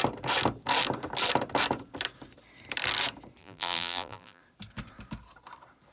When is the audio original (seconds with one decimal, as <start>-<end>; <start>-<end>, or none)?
0.0-3.4; 4.4-5.9